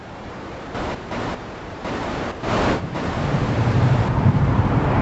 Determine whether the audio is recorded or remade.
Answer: remade